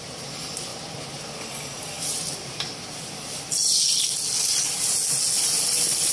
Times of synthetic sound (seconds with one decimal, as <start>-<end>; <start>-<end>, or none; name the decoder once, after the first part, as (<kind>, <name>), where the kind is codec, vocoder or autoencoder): none